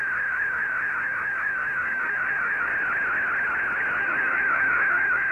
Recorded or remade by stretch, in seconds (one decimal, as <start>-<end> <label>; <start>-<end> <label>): 0.0-2.7 remade; 2.7-4.0 recorded; 4.0-5.3 remade